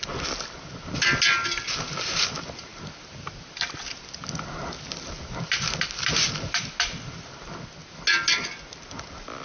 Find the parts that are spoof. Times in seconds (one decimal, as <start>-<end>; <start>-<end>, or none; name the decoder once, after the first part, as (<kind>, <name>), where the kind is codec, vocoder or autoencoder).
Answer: none